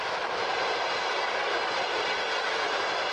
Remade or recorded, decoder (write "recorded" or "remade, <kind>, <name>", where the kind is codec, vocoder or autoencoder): recorded